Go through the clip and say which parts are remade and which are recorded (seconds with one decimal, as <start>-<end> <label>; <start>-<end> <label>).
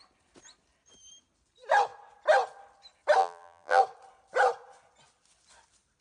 0.0-3.2 recorded; 3.2-3.8 remade; 3.8-6.0 recorded